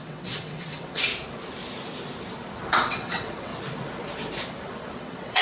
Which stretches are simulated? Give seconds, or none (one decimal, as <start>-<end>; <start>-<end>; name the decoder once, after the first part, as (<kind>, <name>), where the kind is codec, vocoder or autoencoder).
0.0-1.1 (vocoder, WaveNeXt); 2.7-3.5; 5.0-5.4